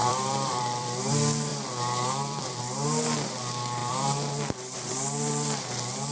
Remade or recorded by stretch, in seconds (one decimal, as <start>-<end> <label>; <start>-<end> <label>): 0.0-1.1 remade; 1.1-1.5 recorded; 1.5-2.6 remade; 2.6-3.8 recorded; 3.8-4.9 remade; 4.9-6.1 recorded